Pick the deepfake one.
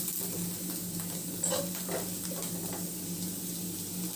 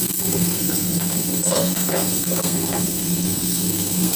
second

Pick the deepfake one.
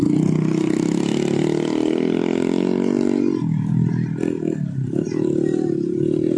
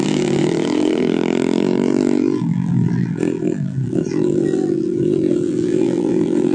second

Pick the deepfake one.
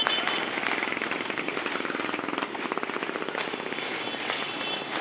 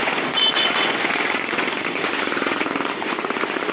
second